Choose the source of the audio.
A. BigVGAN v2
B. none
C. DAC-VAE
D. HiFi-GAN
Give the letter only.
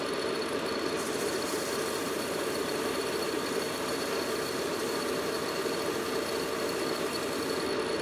A